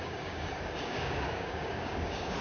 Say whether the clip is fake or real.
fake